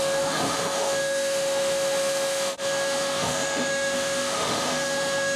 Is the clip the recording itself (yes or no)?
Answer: no